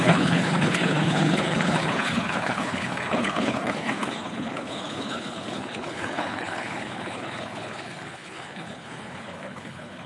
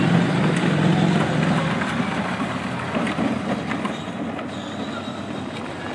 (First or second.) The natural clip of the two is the second